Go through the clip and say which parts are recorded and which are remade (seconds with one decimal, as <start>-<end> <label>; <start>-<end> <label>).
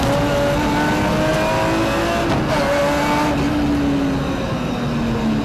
0.0-5.4 recorded